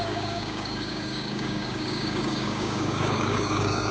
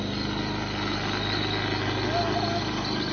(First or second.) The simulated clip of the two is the first